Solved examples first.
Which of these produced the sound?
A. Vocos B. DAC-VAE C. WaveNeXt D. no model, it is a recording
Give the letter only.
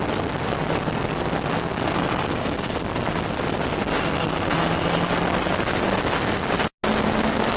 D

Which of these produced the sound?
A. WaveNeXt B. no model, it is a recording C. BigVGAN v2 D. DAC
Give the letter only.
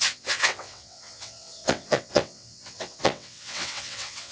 A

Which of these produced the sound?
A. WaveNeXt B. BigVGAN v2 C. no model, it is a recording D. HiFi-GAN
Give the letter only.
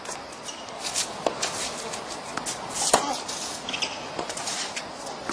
C